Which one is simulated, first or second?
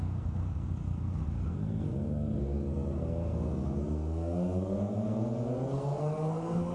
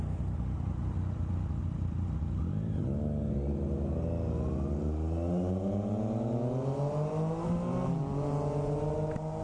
first